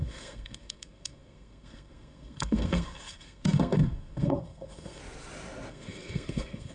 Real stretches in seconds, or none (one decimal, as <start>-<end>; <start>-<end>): 5.0-5.7